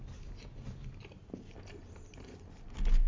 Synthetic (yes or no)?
no